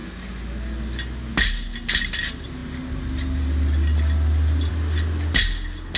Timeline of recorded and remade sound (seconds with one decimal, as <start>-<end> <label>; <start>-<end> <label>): 0.0-6.0 recorded